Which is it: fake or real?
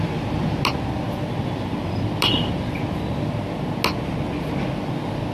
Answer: real